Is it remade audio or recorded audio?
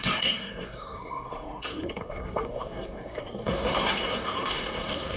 remade